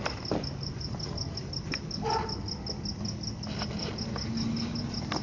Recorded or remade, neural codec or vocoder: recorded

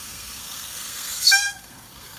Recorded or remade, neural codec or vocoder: remade, codec, SNAC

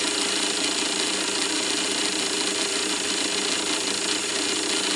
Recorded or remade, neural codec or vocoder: recorded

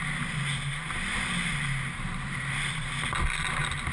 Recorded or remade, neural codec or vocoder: recorded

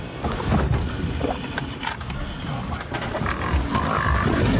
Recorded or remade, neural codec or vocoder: recorded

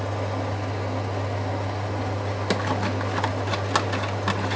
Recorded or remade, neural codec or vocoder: recorded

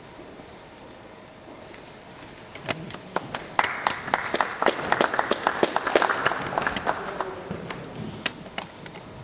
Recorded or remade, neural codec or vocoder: recorded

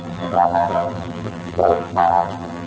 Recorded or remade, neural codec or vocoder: remade, vocoder, BigVGAN v2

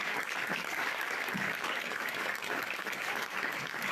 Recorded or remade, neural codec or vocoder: remade, codec, DAC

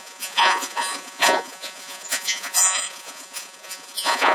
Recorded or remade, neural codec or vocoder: remade, vocoder, Vocos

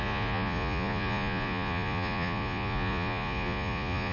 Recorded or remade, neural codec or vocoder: remade, vocoder, Vocos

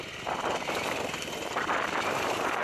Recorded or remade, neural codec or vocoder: recorded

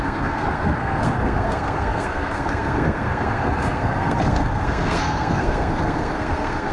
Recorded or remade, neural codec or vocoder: remade, codec, SNAC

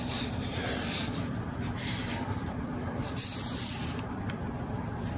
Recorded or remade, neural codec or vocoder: remade, vocoder, BigVGAN v2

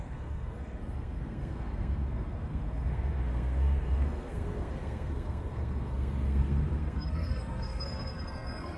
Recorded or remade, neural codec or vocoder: remade, codec, SNAC